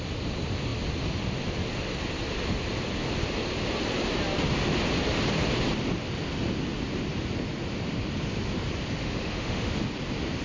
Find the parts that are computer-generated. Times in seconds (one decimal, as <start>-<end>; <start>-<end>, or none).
9.0-9.7

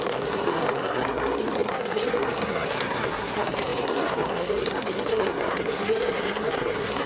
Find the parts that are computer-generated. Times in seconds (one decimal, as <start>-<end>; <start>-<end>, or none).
0.0-7.1

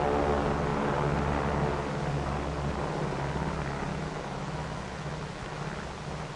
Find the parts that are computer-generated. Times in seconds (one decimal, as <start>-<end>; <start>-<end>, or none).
3.9-5.6

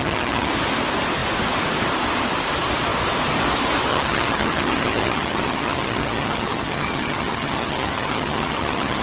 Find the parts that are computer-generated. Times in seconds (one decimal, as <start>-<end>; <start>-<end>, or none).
0.0-0.5; 3.9-9.0

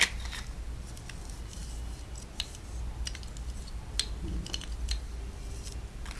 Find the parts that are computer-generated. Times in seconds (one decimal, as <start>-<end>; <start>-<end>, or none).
none

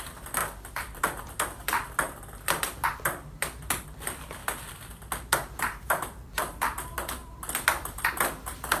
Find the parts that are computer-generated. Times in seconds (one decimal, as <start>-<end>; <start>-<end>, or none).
0.0-4.4; 5.3-8.8

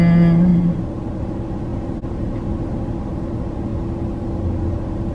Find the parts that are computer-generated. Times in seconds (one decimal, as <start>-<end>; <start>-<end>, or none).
0.5-1.2